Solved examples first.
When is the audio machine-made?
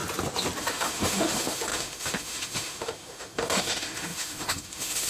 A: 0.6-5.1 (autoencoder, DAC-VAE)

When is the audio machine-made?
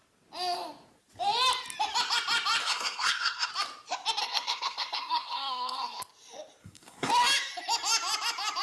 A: 2.6-3.5 (codec, SNAC); 4.2-6.0; 6.6-7.1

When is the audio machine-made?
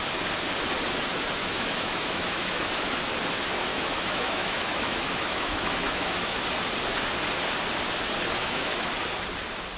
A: 1.4-2.9 (autoencoder, DAC-VAE); 3.7-6.4; 8.4-8.9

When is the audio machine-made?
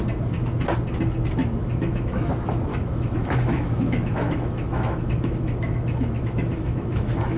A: 1.6-2.3 (autoencoder, DAC-VAE); 2.7-7.4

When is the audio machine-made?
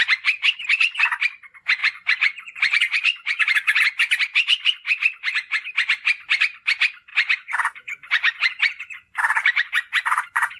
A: 1.8-3.8 (vocoder, Vocos); 7.1-10.6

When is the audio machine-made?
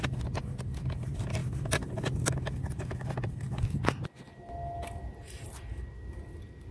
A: none